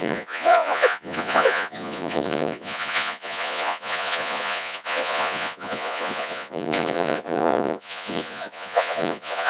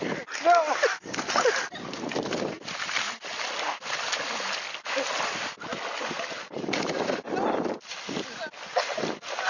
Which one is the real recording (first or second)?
second